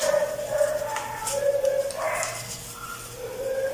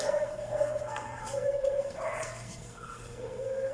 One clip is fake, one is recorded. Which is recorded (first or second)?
first